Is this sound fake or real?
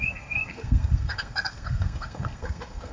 fake